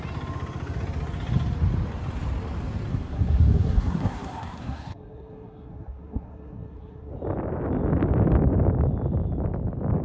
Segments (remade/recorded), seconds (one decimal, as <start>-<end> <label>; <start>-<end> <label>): 0.0-2.9 recorded; 2.9-7.1 remade; 7.1-10.0 recorded

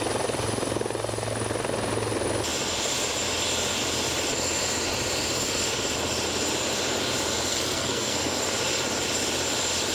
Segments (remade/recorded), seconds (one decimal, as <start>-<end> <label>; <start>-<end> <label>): 0.0-7.5 recorded; 7.5-8.4 remade; 8.4-9.9 recorded

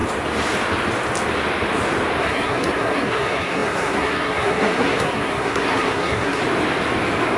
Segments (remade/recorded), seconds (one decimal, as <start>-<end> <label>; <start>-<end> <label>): 0.0-2.2 recorded; 2.2-6.4 remade; 6.4-7.4 recorded

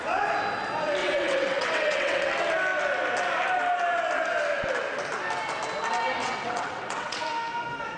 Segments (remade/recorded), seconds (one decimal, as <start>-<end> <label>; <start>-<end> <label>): 0.0-1.0 recorded; 1.0-2.3 remade; 2.3-6.2 recorded; 6.2-7.2 remade; 7.2-8.0 recorded

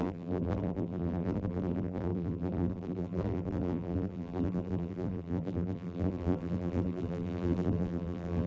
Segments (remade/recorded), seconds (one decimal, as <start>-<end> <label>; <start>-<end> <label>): 0.0-8.5 remade